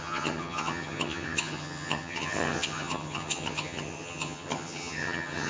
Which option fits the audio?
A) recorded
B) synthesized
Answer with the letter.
B